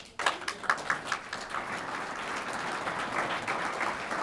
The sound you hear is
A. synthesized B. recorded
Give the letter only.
B